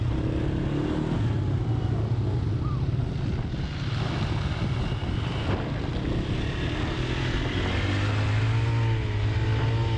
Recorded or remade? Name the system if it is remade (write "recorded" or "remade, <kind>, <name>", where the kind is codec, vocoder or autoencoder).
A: recorded